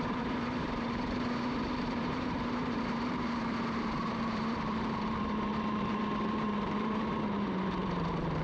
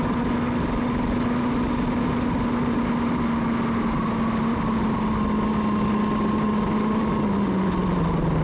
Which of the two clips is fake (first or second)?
first